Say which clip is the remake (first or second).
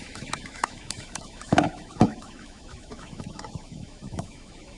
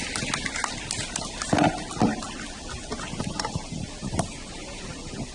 first